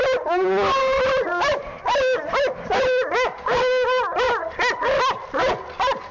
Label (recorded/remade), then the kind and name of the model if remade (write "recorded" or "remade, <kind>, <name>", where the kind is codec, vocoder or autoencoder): recorded